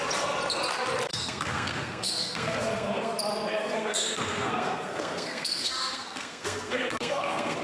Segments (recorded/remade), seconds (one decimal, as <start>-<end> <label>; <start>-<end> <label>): 0.0-1.1 recorded; 1.1-3.1 remade; 3.1-3.6 recorded; 3.6-7.6 remade